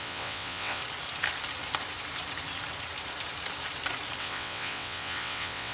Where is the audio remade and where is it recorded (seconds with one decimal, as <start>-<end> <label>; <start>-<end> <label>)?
0.0-0.8 remade; 0.8-4.2 recorded; 4.2-5.7 remade